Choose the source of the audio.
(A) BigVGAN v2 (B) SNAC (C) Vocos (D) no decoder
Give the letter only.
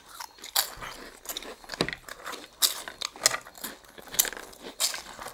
D